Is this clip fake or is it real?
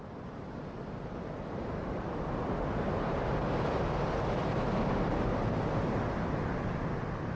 real